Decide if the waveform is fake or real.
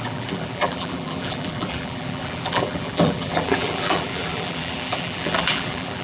fake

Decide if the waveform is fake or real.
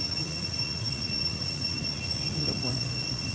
fake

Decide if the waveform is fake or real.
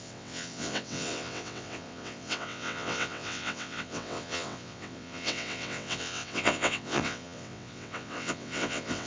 fake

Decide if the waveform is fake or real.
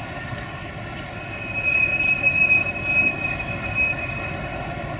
real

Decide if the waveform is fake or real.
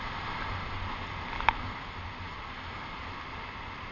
real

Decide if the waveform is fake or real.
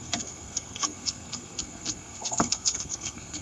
fake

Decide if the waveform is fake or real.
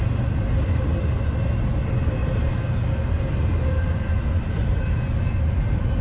real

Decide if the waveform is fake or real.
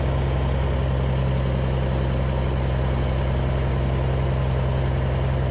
real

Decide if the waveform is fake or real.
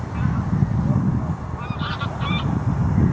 real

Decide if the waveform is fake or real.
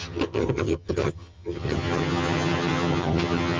fake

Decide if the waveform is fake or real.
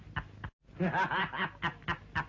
real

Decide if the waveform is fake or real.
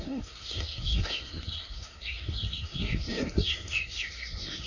fake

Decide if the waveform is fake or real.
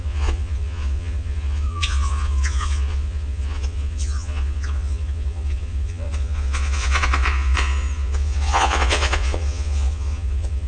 fake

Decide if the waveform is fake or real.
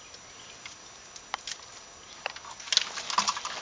real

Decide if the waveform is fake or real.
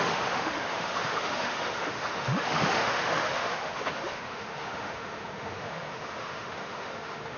fake